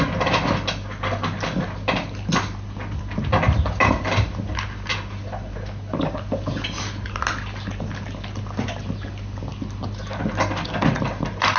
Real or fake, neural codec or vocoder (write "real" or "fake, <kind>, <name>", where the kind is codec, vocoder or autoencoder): real